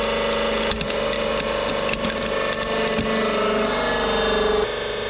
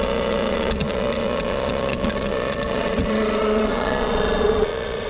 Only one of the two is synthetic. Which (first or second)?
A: second